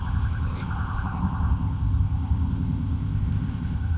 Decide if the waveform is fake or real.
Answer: fake